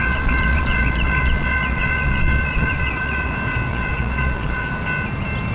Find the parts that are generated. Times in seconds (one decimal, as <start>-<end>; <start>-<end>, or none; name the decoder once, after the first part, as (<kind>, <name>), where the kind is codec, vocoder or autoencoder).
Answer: 0.0-3.3 (vocoder, Vocos); 3.7-4.7